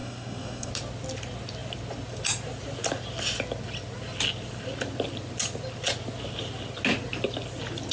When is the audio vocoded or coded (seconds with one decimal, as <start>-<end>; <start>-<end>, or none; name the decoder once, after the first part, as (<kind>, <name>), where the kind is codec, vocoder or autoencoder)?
0.0-0.7 (codec, SNAC)